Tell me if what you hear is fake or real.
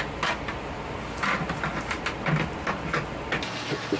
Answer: real